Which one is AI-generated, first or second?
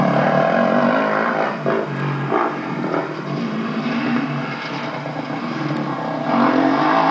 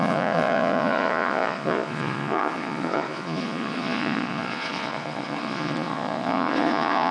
second